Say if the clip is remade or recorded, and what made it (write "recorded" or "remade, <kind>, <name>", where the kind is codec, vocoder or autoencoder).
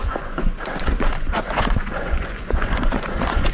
remade, vocoder, Vocos